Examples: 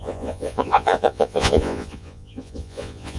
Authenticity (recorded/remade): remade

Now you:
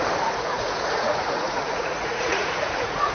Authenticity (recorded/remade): remade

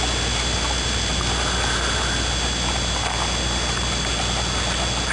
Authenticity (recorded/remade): recorded